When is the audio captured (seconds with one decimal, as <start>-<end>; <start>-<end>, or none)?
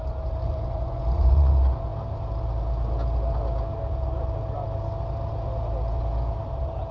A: 0.0-0.4; 1.5-6.9